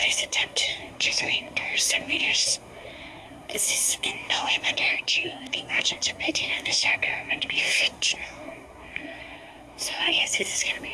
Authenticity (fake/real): fake